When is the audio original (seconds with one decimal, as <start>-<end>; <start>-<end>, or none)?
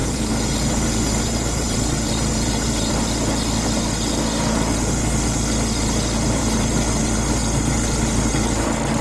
2.9-9.0